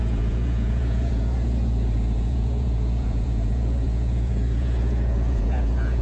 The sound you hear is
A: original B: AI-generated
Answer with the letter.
B